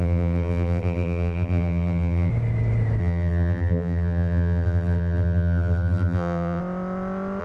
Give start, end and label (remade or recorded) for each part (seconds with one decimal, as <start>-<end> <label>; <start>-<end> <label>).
0.0-2.3 remade; 2.3-3.0 recorded; 3.0-6.6 remade; 6.6-7.4 recorded